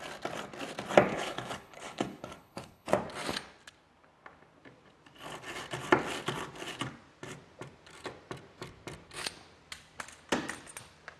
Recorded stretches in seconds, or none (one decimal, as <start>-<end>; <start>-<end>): 0.0-1.1; 2.9-11.2